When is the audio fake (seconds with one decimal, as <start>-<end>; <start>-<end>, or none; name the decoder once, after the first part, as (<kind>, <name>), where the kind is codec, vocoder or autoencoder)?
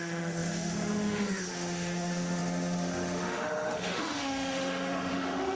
0.0-5.5 (autoencoder, DAC-VAE)